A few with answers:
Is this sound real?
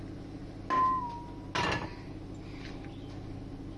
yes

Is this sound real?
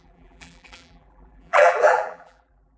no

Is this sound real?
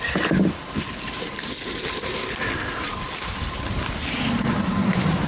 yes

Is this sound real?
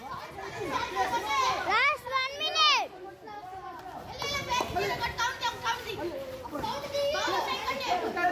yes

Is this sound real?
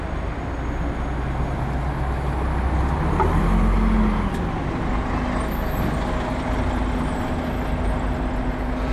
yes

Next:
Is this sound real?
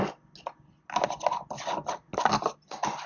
yes